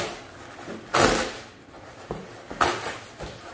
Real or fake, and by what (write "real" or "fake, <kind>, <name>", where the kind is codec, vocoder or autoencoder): real